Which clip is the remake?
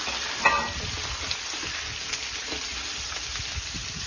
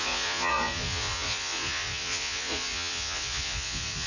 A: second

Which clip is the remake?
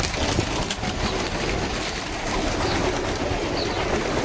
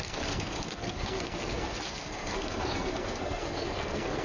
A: second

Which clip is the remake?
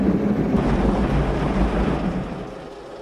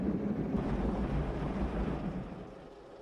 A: second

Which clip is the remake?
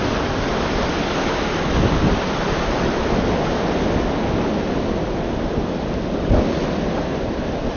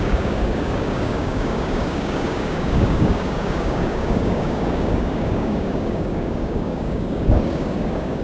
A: second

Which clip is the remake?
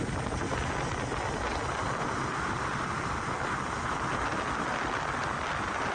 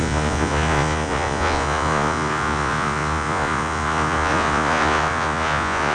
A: second